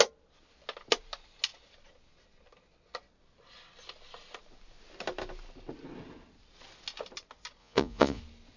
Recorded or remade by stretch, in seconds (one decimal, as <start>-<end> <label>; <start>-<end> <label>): 0.0-7.6 recorded; 7.6-8.2 remade; 8.2-8.6 recorded